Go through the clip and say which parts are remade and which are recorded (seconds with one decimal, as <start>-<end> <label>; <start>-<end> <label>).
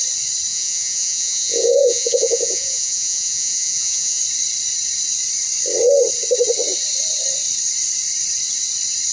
0.0-0.5 recorded; 0.5-4.2 remade; 4.2-9.1 recorded